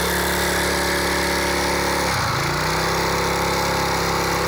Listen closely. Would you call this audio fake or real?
real